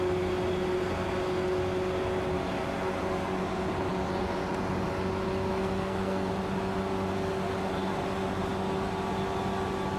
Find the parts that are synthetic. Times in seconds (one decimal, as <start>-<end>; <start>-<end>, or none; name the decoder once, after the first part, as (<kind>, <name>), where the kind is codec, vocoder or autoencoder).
5.5-6.3 (codec, SNAC)